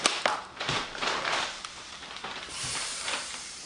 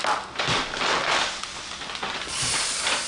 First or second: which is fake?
first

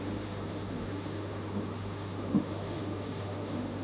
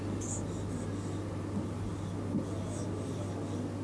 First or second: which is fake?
first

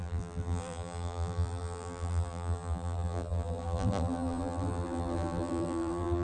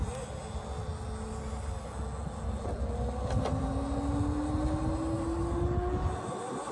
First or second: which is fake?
first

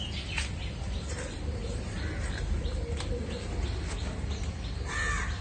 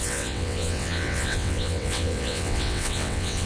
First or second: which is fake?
second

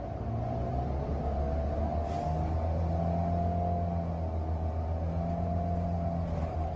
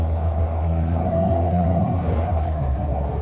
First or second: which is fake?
second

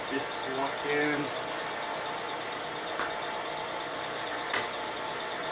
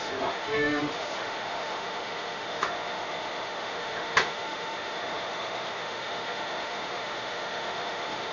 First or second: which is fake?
second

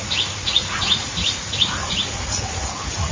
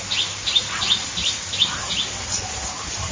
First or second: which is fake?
first